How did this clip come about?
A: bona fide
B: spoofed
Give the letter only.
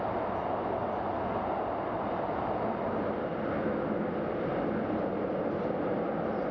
A